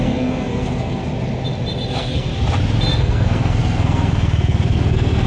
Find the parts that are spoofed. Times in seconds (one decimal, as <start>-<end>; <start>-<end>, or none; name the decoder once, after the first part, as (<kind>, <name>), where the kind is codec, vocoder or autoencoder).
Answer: 0.0-1.0 (codec, SNAC); 1.9-2.3; 2.9-5.3